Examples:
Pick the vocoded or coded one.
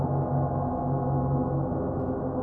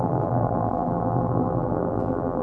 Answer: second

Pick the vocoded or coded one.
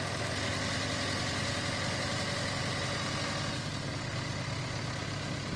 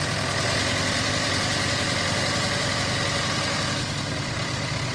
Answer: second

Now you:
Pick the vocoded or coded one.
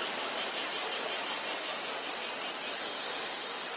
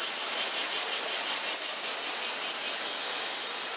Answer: first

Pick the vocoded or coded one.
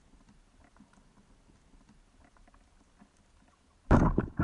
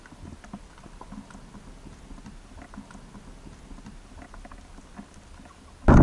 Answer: first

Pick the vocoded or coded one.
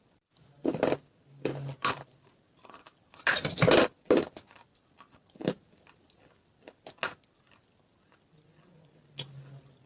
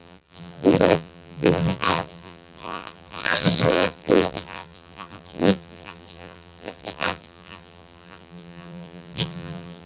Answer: second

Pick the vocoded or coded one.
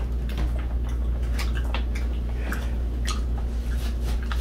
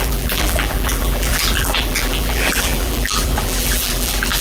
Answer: second